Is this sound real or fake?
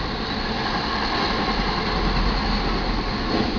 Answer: real